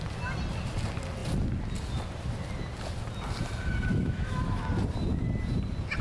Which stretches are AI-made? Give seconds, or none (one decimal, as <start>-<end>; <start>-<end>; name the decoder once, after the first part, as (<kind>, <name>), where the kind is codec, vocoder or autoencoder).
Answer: 3.9-4.6 (autoencoder, DAC-VAE)